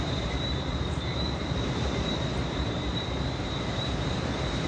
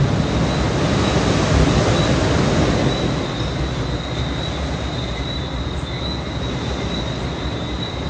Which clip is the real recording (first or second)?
second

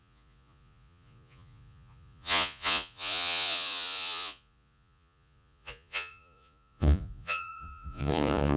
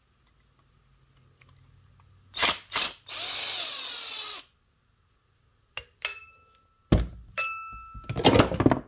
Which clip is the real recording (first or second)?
second